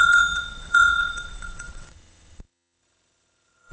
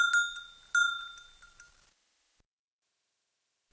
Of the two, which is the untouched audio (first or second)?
second